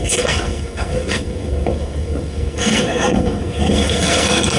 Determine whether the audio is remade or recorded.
remade